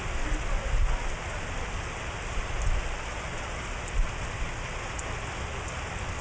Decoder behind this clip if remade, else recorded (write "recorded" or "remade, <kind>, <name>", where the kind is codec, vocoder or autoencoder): recorded